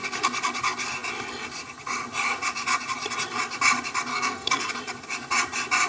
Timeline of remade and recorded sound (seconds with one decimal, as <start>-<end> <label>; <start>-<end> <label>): 0.0-4.1 recorded; 4.1-4.7 remade; 4.7-5.9 recorded